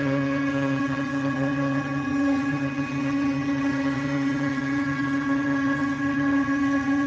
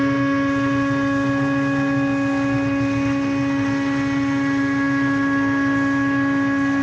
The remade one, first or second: first